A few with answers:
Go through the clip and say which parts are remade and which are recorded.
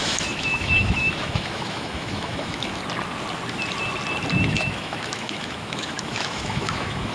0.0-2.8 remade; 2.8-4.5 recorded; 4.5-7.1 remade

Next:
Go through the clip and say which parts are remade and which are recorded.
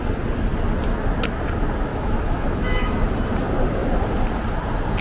0.0-1.9 recorded; 1.9-2.9 remade; 2.9-5.0 recorded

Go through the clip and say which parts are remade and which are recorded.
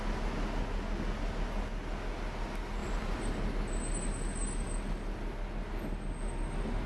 0.0-2.8 recorded; 2.8-3.5 remade; 3.5-6.9 recorded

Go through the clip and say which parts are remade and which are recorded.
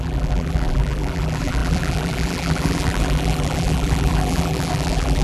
0.0-5.2 remade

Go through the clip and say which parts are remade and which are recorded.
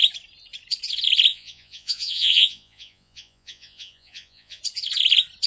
0.0-1.3 recorded; 1.3-4.6 remade; 4.6-5.5 recorded